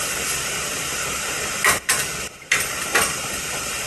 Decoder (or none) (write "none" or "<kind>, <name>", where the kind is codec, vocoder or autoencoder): none